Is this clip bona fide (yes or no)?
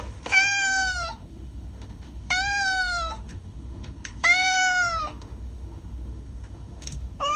no